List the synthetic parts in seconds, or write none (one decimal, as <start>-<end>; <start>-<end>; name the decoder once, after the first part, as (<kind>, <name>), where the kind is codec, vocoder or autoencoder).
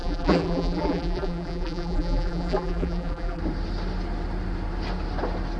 0.0-3.4 (vocoder, BigVGAN v2)